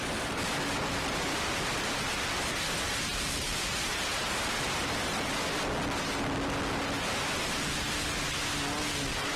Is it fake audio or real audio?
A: real